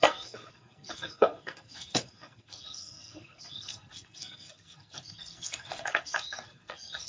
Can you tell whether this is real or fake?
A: fake